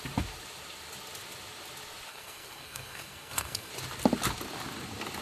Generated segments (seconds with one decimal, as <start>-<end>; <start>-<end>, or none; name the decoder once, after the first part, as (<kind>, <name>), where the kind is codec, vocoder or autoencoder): 2.1-3.7 (codec, SNAC)

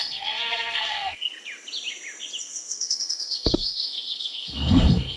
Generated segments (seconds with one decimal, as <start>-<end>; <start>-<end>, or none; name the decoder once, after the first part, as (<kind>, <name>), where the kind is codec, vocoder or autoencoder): 0.0-1.3 (codec, SNAC); 2.4-5.2

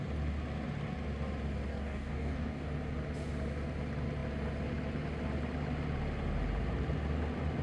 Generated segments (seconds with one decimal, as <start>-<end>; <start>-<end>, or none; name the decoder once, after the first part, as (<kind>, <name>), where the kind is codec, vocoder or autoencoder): 1.7-2.7 (codec, DAC)

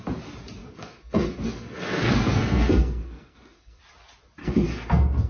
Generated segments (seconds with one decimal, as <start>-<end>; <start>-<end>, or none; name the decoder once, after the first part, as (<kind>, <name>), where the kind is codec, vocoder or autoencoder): 0.6-3.8 (codec, SNAC); 4.4-5.3